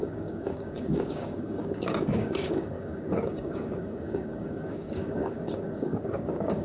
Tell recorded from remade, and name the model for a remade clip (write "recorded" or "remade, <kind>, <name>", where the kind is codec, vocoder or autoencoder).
remade, codec, DAC